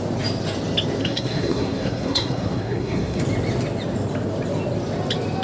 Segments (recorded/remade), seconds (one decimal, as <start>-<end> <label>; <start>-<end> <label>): 0.0-1.0 recorded; 1.0-3.2 remade; 3.2-5.4 recorded